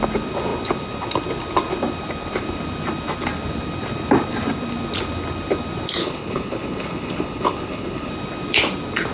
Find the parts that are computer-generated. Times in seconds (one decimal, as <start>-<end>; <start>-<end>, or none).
6.0-8.1